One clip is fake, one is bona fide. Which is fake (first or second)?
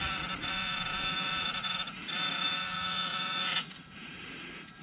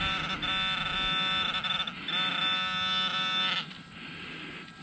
first